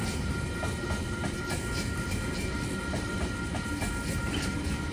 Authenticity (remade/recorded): recorded